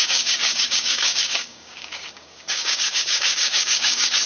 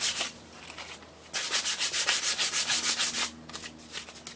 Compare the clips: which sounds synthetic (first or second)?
first